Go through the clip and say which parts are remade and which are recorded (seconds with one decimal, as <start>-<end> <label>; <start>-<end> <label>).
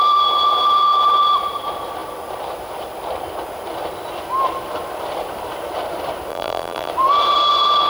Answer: 0.0-6.3 recorded; 6.3-6.9 remade; 6.9-7.9 recorded